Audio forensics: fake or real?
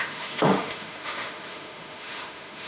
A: fake